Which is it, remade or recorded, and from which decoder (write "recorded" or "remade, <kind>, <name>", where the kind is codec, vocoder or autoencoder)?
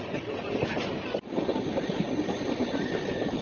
recorded